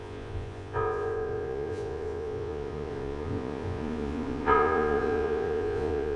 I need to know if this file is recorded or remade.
remade